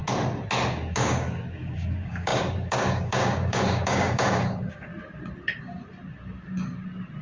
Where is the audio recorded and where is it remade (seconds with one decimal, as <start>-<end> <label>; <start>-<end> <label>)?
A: 0.0-0.7 recorded; 0.7-4.9 remade; 4.9-7.2 recorded